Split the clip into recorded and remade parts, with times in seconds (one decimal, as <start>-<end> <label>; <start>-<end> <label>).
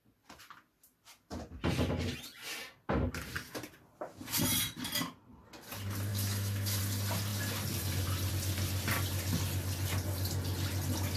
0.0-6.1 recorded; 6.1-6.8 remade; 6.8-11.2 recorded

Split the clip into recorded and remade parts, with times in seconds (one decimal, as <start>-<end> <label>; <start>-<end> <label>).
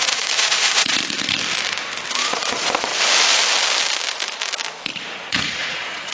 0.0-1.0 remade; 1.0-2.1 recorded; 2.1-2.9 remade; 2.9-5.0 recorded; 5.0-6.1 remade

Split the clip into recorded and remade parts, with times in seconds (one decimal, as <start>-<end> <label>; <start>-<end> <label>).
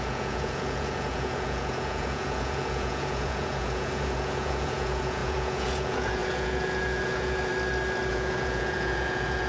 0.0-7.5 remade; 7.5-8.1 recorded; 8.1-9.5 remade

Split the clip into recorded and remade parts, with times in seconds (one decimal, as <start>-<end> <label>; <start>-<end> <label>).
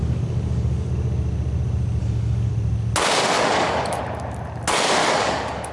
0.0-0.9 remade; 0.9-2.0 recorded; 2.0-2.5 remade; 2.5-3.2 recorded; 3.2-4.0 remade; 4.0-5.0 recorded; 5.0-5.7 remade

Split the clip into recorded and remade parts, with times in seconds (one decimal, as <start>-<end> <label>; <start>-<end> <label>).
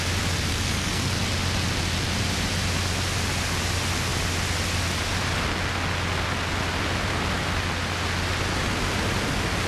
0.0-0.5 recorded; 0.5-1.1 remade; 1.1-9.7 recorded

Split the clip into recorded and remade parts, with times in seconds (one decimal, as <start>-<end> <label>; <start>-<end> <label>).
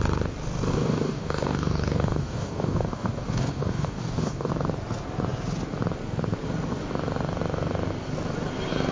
0.0-0.7 recorded; 0.7-4.5 remade; 4.5-8.9 recorded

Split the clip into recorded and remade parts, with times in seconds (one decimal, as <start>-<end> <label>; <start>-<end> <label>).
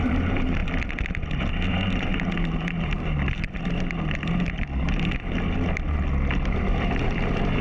0.0-0.6 remade; 0.6-1.7 recorded; 1.7-2.1 remade; 2.1-6.7 recorded; 6.7-7.6 remade